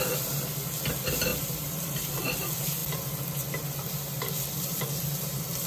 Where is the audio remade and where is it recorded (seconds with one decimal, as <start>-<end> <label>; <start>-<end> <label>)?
0.0-1.3 recorded; 1.3-2.2 remade; 2.2-5.7 recorded